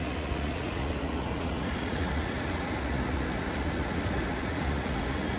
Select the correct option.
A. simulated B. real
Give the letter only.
A